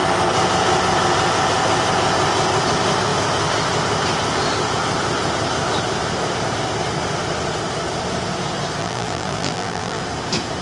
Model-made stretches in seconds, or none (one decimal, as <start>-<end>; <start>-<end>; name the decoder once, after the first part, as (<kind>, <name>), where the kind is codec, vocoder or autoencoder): 8.8-10.0 (vocoder, BigVGAN v2)

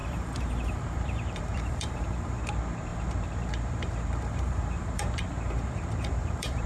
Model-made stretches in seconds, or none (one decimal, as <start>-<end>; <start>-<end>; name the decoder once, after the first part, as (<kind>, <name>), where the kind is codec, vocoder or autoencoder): 0.0-2.4 (vocoder, BigVGAN v2); 2.9-6.7